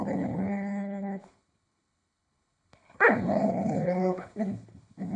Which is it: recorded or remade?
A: remade